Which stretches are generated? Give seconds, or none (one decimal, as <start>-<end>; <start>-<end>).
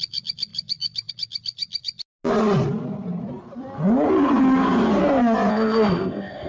5.5-6.5